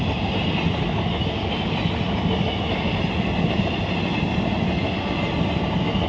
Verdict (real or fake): real